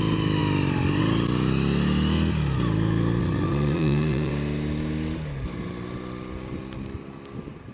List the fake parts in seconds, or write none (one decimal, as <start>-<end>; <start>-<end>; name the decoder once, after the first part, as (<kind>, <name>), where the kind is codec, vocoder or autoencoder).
3.2-4.3 (vocoder, Vocos)